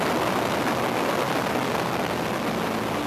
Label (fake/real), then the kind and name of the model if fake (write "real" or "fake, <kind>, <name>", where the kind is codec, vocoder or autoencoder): real